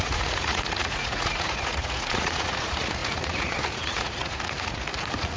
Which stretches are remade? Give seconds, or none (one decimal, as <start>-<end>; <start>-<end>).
0.0-5.4